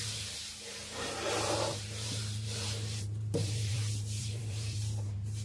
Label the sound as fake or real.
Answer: fake